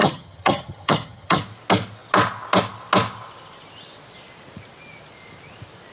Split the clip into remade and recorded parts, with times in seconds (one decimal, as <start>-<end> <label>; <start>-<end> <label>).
0.0-1.4 remade; 1.4-5.9 recorded

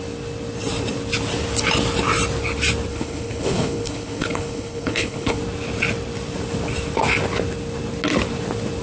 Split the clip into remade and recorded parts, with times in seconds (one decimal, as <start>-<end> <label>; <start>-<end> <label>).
0.0-2.9 recorded; 2.9-5.4 remade; 5.4-8.8 recorded